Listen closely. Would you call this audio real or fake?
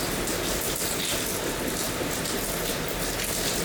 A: real